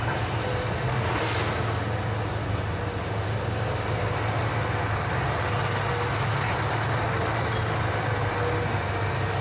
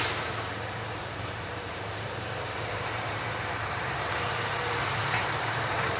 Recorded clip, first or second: first